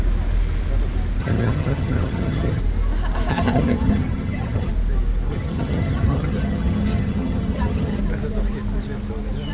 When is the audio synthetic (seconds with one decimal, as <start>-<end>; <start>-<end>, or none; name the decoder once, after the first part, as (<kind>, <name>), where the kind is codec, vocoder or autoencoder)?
1.2-2.6 (vocoder, HiFi-GAN); 3.3-4.7; 5.3-8.0